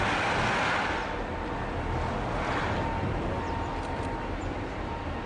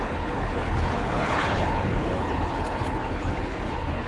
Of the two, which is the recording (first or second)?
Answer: first